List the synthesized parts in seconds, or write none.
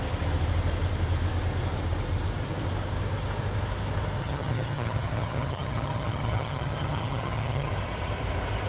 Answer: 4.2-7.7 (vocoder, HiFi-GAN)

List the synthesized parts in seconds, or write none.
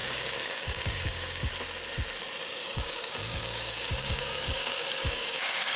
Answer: 0.0-1.5 (codec, DAC); 2.6-5.8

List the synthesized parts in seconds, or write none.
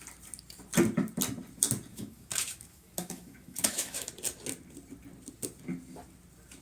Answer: 1.9-4.1 (autoencoder, DAC-VAE)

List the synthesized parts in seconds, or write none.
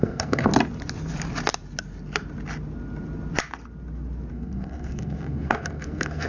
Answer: 0.0-0.5 (codec, SNAC); 4.3-6.3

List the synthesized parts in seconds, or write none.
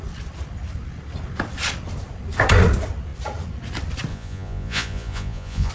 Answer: 4.1-5.7 (vocoder, Vocos)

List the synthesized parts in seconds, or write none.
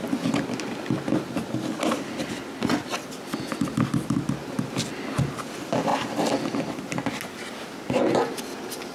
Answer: none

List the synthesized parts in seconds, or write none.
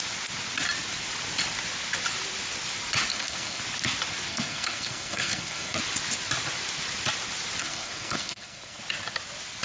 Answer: 3.1-3.6 (codec, SNAC); 4.3-5.8; 7.6-8.8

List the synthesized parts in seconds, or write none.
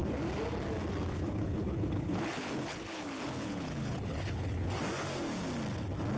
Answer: 1.1-4.8 (codec, HILCodec)